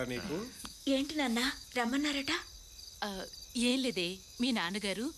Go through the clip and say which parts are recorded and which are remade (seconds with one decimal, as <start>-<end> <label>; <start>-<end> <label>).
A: 0.0-0.5 recorded; 0.5-1.9 remade; 1.9-3.7 recorded; 3.7-5.2 remade